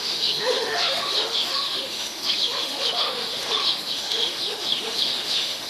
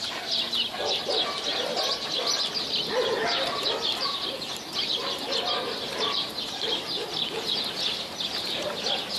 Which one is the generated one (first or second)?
first